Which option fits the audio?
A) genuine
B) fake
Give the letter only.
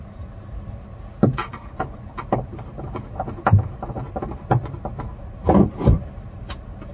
B